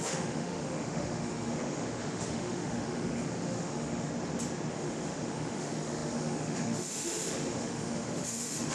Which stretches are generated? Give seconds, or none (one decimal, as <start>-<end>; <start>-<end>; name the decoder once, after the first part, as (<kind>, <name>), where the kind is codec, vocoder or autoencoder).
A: 0.0-4.1 (autoencoder, DAC-VAE); 4.7-8.7